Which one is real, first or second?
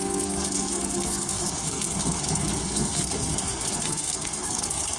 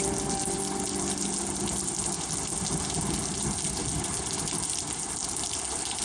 second